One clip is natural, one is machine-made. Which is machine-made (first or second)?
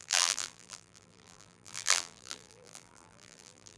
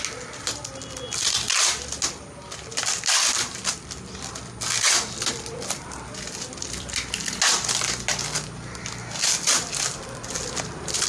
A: first